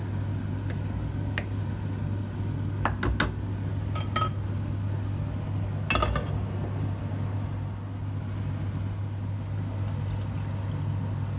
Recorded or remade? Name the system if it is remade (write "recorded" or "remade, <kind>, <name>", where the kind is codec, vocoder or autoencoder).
recorded